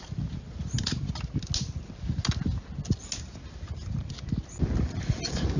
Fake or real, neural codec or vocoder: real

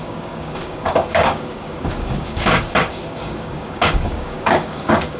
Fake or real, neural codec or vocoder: fake, codec, DAC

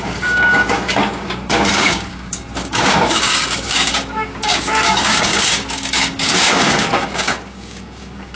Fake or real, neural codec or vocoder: fake, codec, DAC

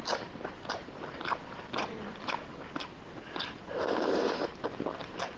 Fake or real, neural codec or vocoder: real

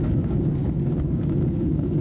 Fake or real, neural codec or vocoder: fake, codec, DAC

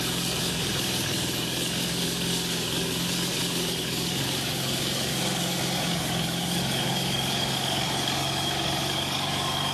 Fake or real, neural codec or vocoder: fake, codec, DAC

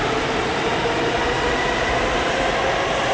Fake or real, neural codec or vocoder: real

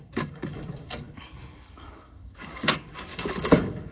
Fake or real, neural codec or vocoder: fake, codec, DAC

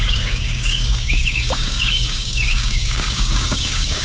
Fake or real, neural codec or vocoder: fake, codec, DAC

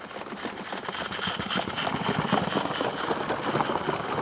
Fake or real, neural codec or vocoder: real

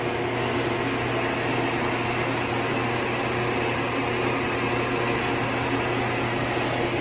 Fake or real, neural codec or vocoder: real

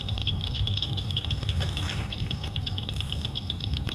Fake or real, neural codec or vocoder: fake, codec, DAC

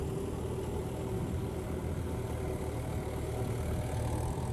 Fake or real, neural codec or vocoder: real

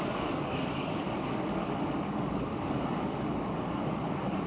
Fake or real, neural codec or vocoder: fake, codec, DAC